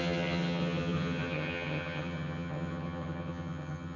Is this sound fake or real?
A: fake